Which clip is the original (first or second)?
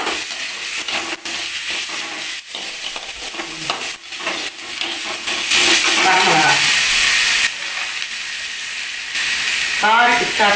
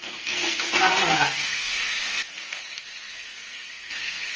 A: first